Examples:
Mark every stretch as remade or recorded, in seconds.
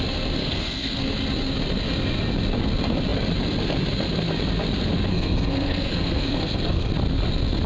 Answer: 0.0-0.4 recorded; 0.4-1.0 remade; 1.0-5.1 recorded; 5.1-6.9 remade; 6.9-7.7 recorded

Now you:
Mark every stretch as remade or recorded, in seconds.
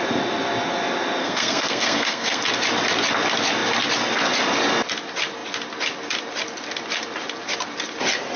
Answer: 0.0-1.2 recorded; 1.2-2.4 remade; 2.4-8.4 recorded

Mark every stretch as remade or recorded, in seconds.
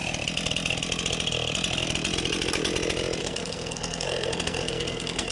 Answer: 0.0-3.2 recorded; 3.2-5.3 remade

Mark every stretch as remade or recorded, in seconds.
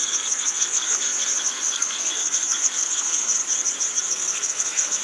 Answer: 0.0-3.4 remade; 3.4-4.1 recorded; 4.1-5.0 remade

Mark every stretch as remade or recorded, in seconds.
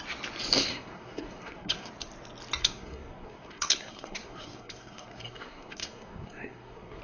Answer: 0.0-0.7 recorded; 0.7-1.9 remade; 1.9-2.6 recorded; 2.6-7.0 remade